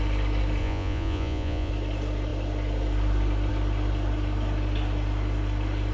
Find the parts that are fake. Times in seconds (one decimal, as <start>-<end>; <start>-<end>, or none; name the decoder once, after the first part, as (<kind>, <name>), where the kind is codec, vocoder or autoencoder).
0.6-1.7 (vocoder, Vocos)